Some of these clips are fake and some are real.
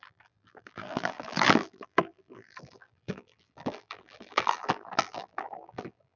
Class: fake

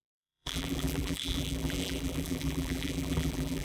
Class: fake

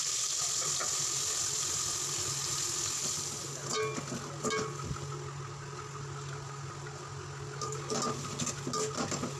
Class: real